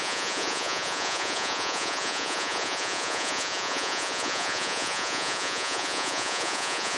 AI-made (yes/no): yes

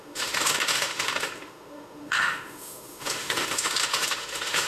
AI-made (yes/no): yes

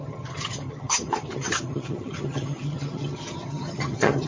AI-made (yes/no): yes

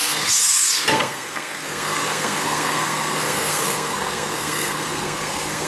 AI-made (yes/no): yes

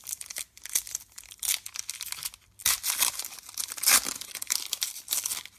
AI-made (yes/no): no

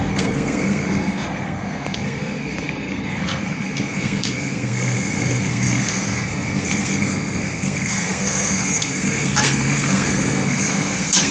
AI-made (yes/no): yes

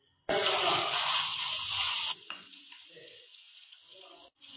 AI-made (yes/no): yes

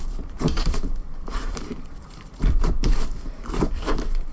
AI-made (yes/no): yes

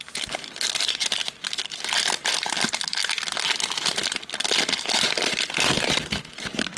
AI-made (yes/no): no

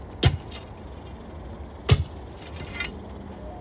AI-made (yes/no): no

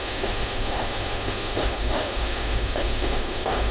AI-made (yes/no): yes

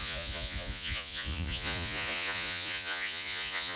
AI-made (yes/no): yes